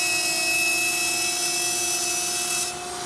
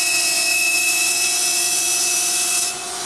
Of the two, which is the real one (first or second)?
first